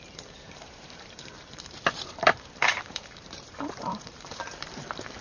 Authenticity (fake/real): fake